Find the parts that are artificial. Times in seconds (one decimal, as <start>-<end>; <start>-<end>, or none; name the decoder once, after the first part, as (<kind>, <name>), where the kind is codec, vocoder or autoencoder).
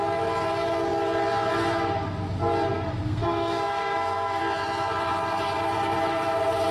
2.7-4.4 (codec, SNAC)